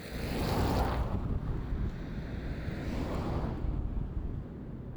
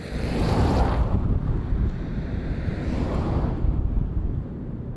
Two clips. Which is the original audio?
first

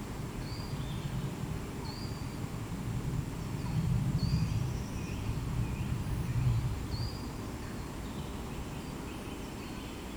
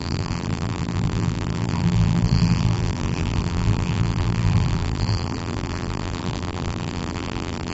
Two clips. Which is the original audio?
first